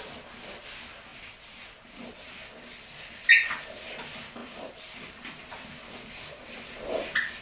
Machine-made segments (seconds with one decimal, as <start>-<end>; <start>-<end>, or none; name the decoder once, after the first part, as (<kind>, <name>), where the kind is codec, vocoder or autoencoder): 1.1-1.7 (vocoder, BigVGAN v2); 4.4-6.8